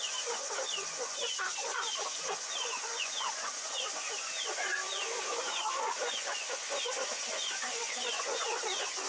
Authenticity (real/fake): fake